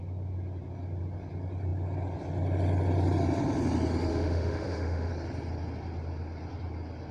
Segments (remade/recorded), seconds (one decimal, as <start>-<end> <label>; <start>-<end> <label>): 0.0-4.1 recorded; 4.1-5.1 remade; 5.1-7.1 recorded